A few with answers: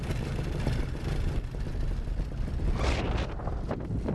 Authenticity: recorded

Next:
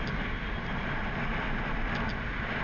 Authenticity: recorded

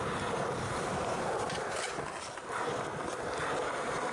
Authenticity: recorded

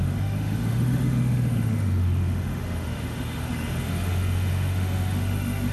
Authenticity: remade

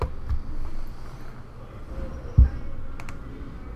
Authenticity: recorded